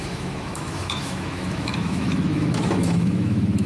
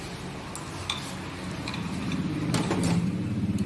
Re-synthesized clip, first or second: first